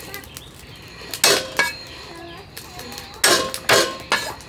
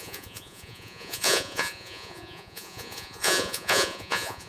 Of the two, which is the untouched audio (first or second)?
first